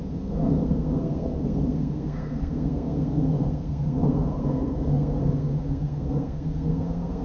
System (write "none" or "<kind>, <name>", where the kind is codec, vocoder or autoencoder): codec, SNAC